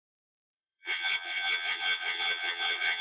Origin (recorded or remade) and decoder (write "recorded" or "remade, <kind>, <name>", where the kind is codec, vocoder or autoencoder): remade, vocoder, WaveNeXt